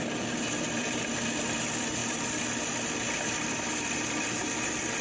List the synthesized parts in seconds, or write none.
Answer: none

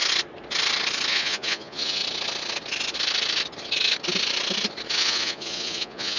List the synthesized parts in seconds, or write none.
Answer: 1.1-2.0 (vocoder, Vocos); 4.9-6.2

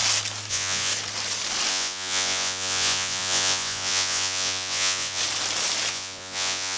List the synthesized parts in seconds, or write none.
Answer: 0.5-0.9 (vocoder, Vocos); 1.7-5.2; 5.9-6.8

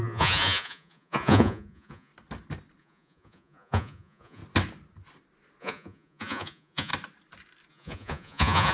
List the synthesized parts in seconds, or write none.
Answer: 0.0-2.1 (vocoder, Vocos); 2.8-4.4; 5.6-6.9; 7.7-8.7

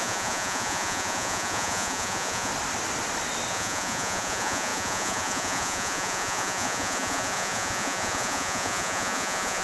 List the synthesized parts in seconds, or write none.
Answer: 0.0-2.5 (vocoder, Vocos); 3.5-9.6

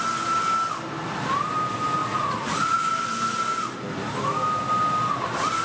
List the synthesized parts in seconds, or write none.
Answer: 2.0-2.9 (vocoder, Vocos)